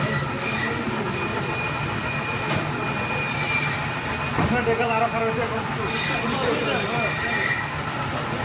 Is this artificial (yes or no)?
no